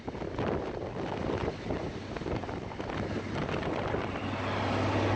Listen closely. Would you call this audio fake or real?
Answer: real